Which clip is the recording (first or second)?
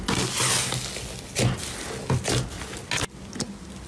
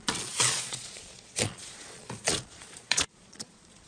first